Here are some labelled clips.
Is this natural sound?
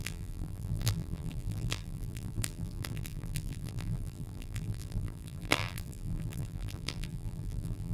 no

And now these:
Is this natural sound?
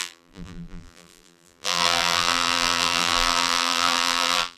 no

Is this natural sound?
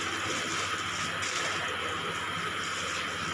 yes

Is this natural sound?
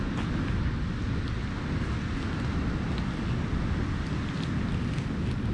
yes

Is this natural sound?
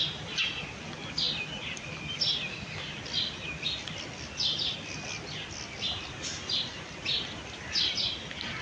yes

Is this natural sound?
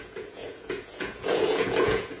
no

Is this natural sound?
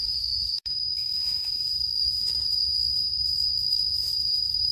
no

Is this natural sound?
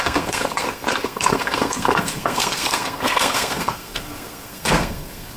no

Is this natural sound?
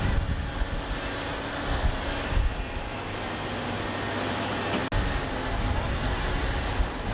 yes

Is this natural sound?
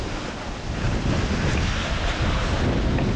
yes